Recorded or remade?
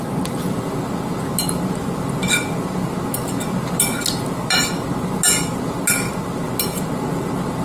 recorded